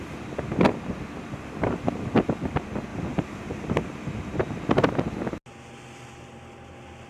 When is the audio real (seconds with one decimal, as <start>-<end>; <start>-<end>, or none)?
0.0-7.1